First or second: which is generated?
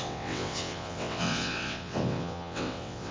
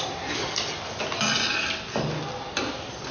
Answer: first